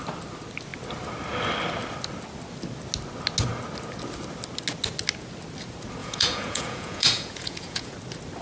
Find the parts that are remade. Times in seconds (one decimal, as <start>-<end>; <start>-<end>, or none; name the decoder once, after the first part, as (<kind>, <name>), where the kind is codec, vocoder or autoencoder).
6.0-7.9 (vocoder, Vocos)